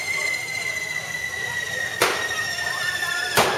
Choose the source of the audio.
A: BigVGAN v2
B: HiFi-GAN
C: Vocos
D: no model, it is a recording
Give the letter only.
A